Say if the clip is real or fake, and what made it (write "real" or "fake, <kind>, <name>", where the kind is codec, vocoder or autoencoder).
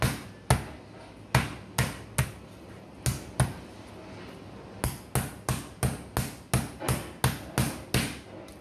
real